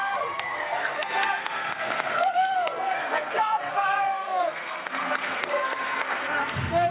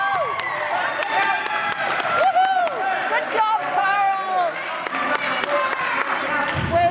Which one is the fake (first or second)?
first